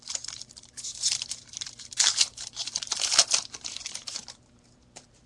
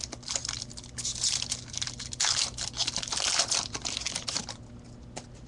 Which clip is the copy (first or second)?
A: first